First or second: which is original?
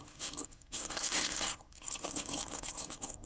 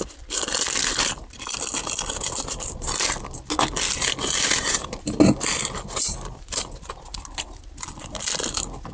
second